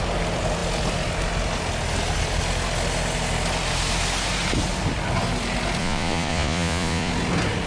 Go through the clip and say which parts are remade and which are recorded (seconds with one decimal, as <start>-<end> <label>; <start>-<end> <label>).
0.0-5.8 recorded; 5.8-7.1 remade; 7.1-7.7 recorded